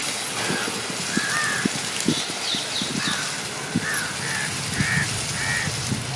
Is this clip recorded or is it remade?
recorded